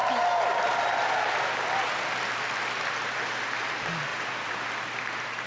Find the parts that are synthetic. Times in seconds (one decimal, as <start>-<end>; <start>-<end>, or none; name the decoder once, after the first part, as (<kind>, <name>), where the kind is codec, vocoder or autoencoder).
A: 4.1-4.7 (vocoder, Vocos)